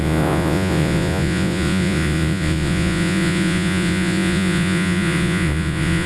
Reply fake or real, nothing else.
fake